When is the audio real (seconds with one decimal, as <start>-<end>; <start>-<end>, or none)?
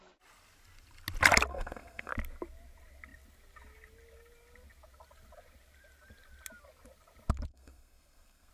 0.0-1.5; 2.1-7.5